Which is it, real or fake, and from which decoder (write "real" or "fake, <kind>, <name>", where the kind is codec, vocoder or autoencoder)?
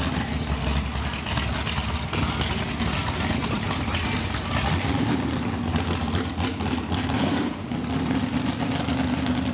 real